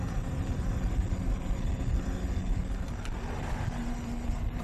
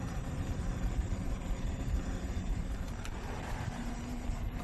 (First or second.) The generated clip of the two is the second